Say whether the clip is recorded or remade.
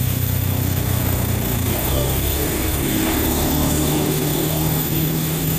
remade